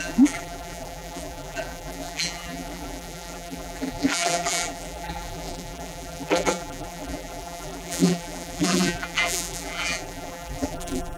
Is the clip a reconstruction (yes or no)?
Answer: yes